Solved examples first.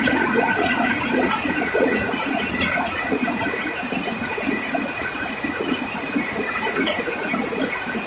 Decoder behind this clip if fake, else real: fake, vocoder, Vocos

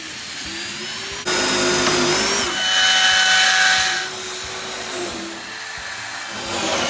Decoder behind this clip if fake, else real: real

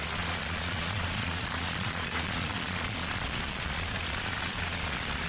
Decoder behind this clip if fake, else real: fake, vocoder, Vocos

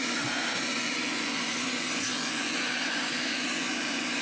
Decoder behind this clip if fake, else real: fake, vocoder, Vocos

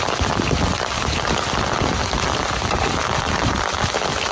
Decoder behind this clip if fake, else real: real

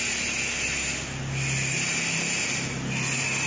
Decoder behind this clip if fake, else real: real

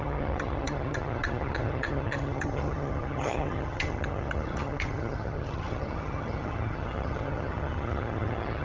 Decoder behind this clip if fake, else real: fake, vocoder, HiFi-GAN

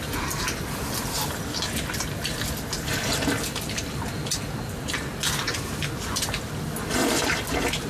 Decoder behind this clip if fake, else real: real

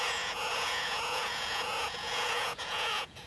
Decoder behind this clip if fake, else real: fake, vocoder, Vocos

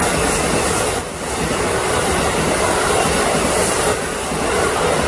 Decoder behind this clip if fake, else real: real